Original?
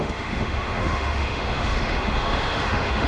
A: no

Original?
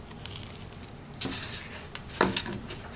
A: yes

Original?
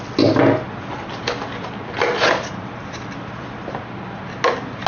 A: yes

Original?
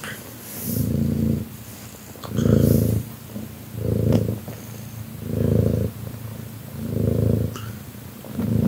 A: yes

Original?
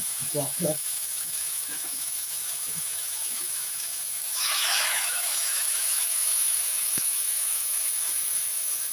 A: no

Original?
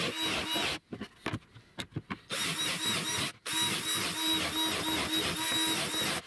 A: yes